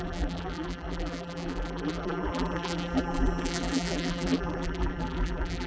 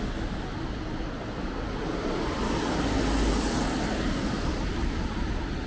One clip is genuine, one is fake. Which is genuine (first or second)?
second